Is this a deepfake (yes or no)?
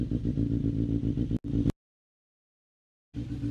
no